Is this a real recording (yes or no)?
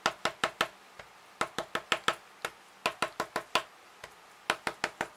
yes